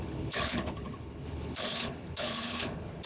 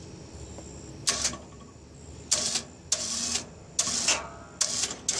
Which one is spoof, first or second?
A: first